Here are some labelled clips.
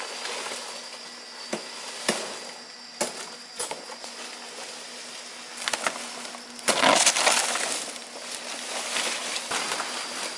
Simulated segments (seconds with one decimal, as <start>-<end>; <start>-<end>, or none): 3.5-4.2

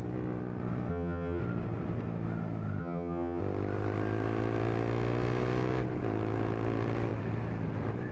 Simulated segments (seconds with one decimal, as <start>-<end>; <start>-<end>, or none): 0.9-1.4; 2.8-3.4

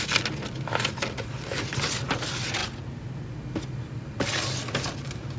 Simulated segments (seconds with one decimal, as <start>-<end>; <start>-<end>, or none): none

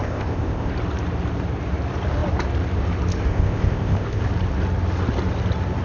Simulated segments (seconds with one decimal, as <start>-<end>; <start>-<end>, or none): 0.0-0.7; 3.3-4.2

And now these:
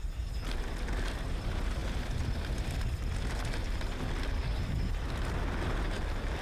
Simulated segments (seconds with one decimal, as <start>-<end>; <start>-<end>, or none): none

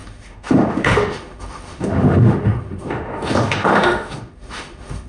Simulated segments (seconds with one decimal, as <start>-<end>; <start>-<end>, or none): 0.0-5.1

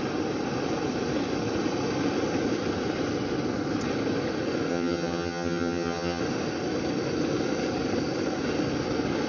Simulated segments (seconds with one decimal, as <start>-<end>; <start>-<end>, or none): 4.7-6.2

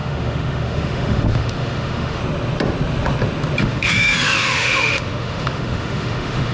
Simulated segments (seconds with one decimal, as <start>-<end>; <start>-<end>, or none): 0.0-2.2; 3.6-6.5